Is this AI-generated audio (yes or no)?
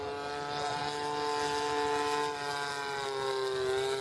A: no